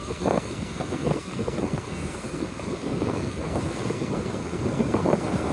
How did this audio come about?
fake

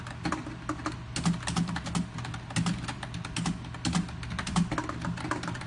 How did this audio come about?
real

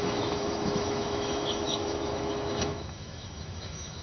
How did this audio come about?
fake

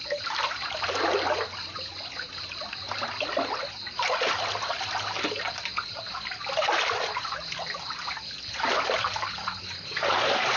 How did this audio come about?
real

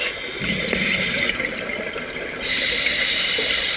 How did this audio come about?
real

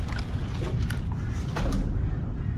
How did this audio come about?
real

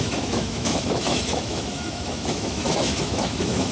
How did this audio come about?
fake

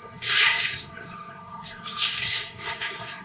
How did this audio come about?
fake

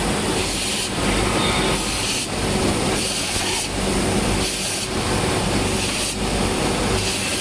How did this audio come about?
real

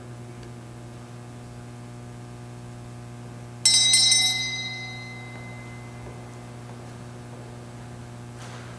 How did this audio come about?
real